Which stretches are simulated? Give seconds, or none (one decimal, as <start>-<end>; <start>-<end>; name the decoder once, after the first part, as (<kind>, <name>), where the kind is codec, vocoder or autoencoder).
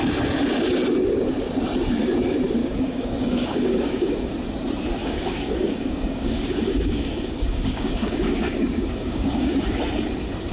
2.6-4.3 (codec, DAC); 5.0-9.8